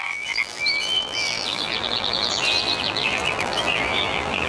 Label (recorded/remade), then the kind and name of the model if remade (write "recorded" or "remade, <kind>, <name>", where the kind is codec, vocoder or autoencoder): remade, vocoder, BigVGAN v2